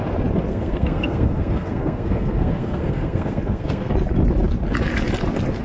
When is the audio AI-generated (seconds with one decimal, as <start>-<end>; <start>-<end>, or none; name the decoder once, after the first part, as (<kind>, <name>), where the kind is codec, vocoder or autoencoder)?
0.5-3.9 (codec, SNAC)